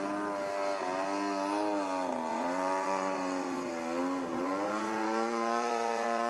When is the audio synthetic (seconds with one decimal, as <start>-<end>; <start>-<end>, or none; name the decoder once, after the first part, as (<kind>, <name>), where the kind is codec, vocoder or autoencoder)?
2.3-3.7 (vocoder, Vocos); 4.3-6.3